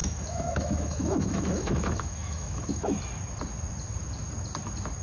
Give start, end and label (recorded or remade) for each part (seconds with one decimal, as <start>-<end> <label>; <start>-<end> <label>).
0.0-3.0 remade; 3.0-5.0 recorded